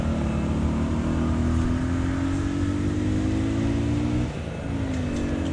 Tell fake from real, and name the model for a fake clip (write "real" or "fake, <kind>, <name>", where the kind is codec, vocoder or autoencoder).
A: real